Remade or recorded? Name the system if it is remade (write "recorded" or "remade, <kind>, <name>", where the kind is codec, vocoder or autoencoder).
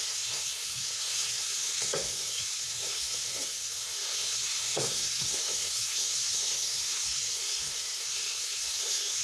remade, codec, SNAC